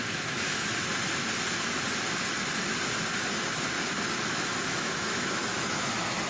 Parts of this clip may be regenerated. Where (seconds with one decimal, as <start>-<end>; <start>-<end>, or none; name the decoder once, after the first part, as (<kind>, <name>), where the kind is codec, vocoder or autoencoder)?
0.0-0.7 (autoencoder, DAC-VAE); 4.3-6.3